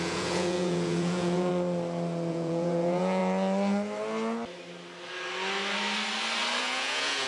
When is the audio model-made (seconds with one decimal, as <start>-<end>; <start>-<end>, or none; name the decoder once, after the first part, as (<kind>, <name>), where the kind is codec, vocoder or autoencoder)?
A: 0.0-1.5 (vocoder, Vocos); 2.3-3.2; 6.6-7.3